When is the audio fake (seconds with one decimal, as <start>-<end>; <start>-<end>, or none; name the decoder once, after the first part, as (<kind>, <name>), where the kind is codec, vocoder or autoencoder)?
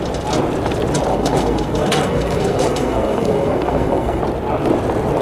1.1-4.2 (codec, SNAC)